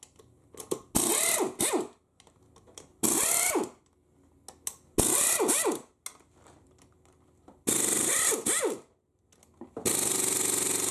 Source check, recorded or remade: recorded